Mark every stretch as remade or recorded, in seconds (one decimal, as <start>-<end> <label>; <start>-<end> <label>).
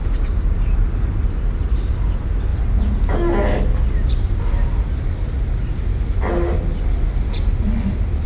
0.0-8.3 recorded